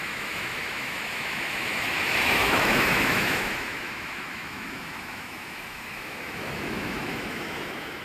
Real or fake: fake